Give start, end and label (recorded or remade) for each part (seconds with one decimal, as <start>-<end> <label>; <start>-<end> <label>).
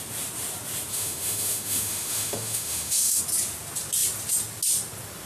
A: 0.0-0.9 recorded; 0.9-3.2 remade; 3.2-5.3 recorded